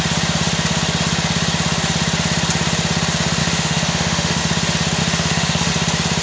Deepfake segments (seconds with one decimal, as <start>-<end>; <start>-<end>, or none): 3.4-4.4; 5.0-5.7